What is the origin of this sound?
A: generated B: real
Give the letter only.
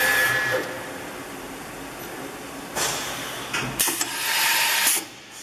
A